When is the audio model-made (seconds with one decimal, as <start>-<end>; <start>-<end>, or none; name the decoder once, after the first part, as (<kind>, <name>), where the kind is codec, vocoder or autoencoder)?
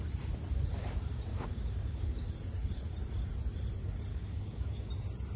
1.3-2.3 (codec, DAC); 4.1-4.9